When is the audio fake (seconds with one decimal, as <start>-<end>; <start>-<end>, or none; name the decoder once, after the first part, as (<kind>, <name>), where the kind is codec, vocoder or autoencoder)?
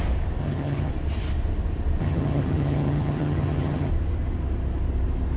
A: 0.4-0.9 (vocoder, HiFi-GAN); 2.0-3.9